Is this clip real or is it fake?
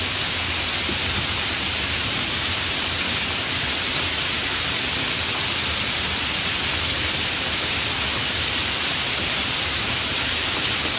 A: fake